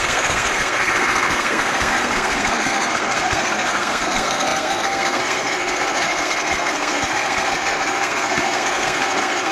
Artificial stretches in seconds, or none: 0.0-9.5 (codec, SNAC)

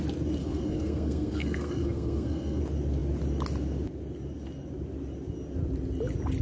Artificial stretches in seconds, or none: 0.4-2.6 (codec, SNAC)